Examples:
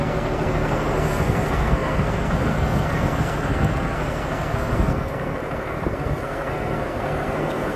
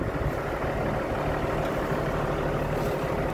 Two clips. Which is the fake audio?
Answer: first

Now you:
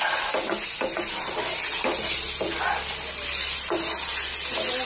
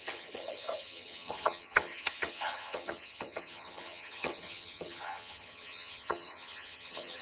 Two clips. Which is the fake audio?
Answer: second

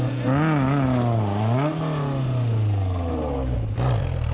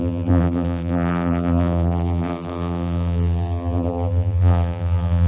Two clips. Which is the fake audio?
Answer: second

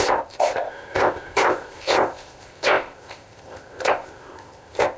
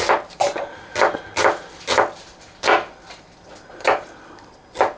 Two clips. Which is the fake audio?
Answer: first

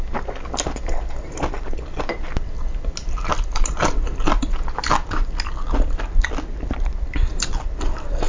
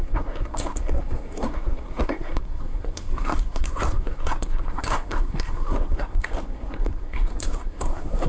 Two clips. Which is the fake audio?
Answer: second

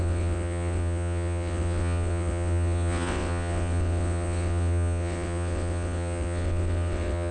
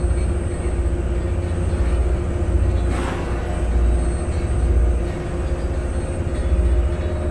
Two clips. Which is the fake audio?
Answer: first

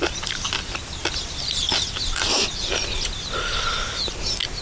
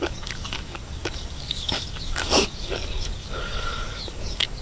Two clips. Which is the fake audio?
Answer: second